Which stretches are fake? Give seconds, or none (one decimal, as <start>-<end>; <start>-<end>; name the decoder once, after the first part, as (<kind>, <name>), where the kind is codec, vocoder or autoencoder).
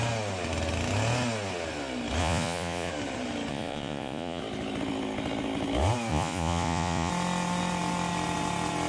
2.2-2.9 (vocoder, Vocos); 3.5-4.4; 6.1-7.1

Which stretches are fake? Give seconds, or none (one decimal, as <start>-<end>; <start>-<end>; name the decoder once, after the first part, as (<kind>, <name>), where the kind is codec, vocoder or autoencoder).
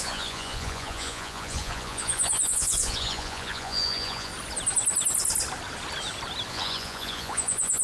0.0-4.3 (vocoder, Vocos); 6.5-7.8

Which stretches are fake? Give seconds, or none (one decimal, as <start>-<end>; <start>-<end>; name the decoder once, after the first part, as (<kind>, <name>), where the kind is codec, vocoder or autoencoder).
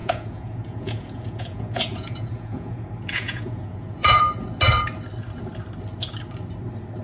0.0-4.2 (vocoder, Vocos)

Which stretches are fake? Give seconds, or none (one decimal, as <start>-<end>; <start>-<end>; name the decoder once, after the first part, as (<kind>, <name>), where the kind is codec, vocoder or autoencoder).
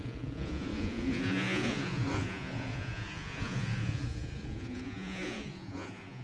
0.0-6.2 (vocoder, Vocos)